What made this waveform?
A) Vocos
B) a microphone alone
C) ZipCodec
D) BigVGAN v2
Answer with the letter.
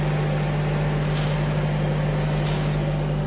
B